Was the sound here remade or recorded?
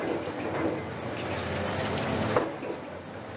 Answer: recorded